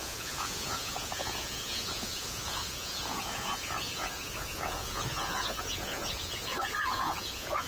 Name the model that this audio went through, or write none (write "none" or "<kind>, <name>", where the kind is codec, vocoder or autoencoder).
vocoder, Vocos